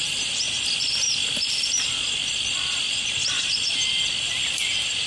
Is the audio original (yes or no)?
no